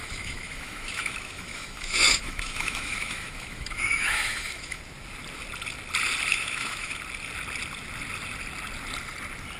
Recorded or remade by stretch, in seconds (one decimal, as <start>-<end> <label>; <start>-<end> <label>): 0.0-4.8 remade; 4.8-6.3 recorded; 6.3-7.0 remade; 7.0-9.6 recorded